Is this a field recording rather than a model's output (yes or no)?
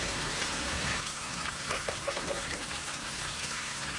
no